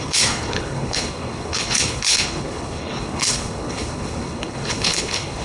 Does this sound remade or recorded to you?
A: remade